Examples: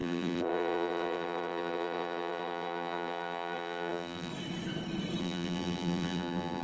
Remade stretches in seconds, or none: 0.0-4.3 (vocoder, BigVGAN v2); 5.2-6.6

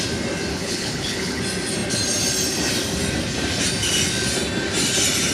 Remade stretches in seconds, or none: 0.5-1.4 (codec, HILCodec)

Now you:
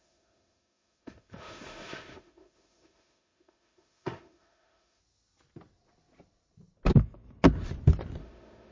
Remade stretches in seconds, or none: 0.0-5.0 (autoencoder, DAC-VAE); 8.2-8.7